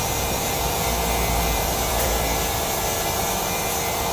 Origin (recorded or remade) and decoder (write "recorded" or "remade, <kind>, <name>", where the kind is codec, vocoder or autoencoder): remade, vocoder, BigVGAN v2